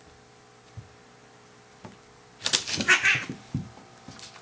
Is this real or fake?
real